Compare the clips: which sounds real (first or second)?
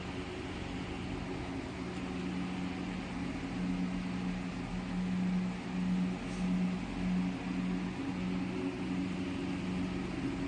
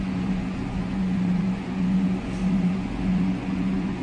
first